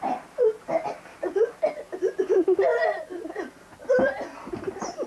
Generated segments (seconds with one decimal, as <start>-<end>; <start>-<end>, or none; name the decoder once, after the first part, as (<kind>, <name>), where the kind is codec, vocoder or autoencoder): none